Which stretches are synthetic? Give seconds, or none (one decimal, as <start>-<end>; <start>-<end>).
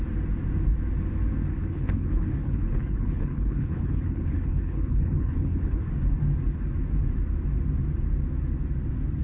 1.5-5.8